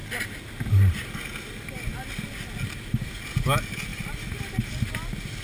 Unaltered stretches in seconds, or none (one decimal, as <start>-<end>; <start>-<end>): 0.0-5.4